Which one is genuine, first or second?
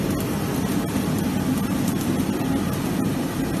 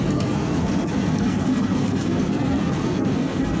first